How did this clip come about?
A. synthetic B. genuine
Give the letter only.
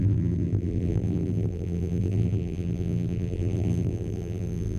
A